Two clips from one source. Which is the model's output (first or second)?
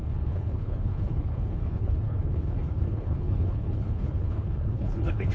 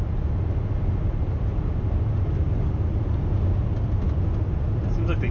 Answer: first